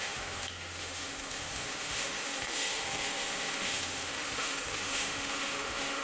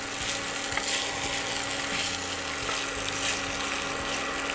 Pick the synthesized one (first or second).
first